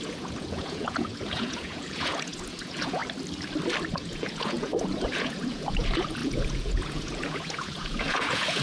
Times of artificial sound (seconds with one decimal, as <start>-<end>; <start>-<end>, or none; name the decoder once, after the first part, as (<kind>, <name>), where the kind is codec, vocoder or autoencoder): 0.0-3.0 (vocoder, Vocos); 3.9-8.6